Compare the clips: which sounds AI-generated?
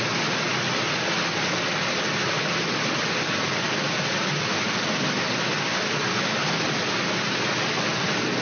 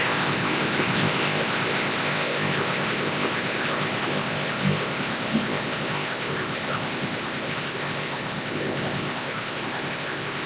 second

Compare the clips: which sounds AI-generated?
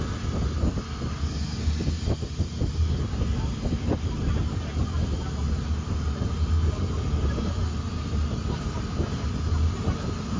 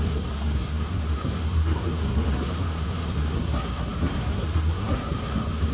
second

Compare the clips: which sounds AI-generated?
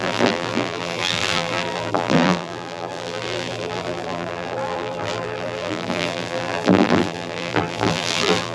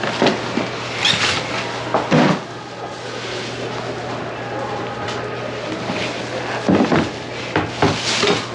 first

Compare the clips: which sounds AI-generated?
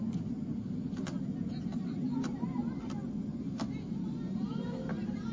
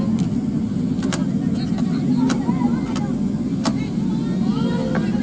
first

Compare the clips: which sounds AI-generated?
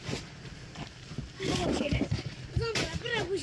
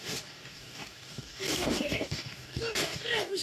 second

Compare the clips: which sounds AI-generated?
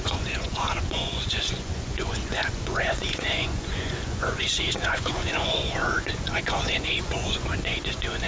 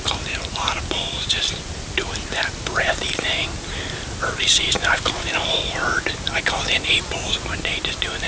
first